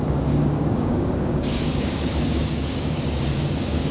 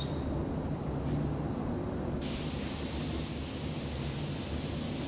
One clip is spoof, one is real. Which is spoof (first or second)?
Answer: first